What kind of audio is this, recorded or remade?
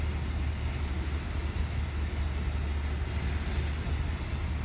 recorded